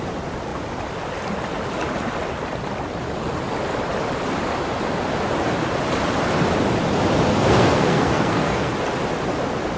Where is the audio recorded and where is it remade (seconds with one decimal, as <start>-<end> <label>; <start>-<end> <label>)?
0.0-7.3 recorded; 7.3-8.7 remade; 8.7-9.8 recorded